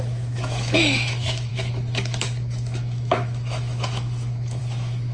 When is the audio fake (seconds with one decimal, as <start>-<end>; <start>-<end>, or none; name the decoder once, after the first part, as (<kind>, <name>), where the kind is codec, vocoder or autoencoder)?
0.0-5.1 (autoencoder, DAC-VAE)